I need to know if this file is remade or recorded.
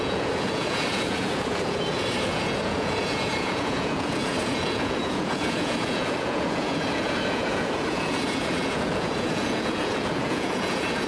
remade